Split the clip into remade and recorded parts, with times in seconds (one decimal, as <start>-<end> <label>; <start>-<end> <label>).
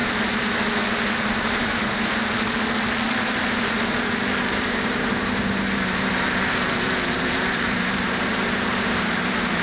0.0-1.3 recorded; 1.3-2.1 remade; 2.1-3.6 recorded; 3.6-9.6 remade